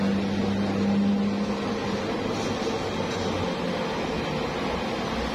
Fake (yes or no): no